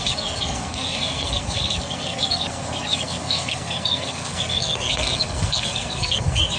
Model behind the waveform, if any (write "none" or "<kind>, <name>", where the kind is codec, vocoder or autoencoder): codec, SNAC